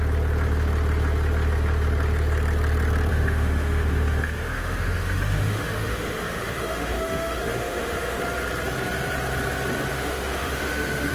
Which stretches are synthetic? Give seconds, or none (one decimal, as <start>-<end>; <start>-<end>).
3.1-8.2; 9.9-11.1